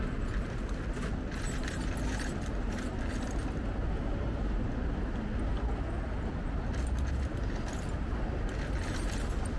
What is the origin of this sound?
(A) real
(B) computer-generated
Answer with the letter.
A